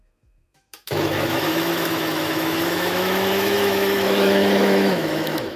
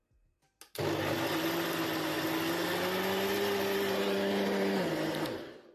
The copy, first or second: first